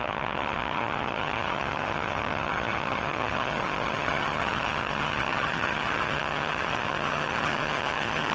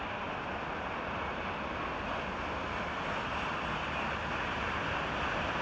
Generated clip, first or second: first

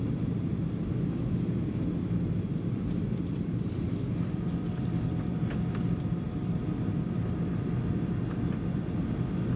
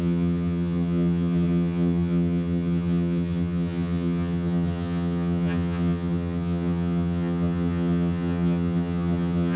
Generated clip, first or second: second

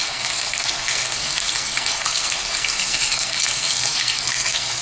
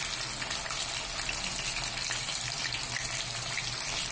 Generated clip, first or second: first